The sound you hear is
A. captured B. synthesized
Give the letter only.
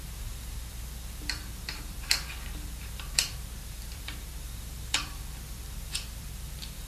B